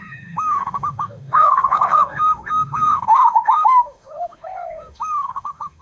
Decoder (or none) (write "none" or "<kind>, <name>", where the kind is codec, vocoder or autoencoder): autoencoder, DAC-VAE